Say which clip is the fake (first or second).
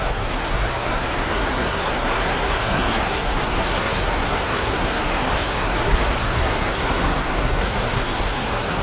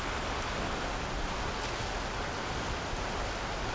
first